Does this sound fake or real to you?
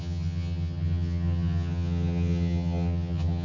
fake